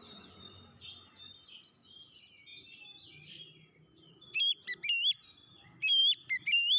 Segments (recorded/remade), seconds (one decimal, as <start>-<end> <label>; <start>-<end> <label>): 0.0-6.8 recorded